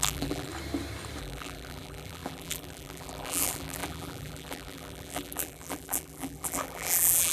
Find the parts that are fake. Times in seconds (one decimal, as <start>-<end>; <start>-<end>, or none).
0.0-0.5; 1.2-7.3